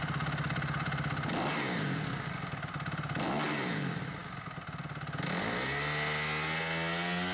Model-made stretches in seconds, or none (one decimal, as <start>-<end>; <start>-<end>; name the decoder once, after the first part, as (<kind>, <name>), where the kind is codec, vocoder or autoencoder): none